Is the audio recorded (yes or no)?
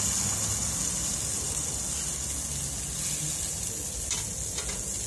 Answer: yes